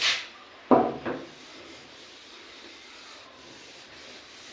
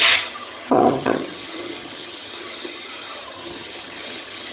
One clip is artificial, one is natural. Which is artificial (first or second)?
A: second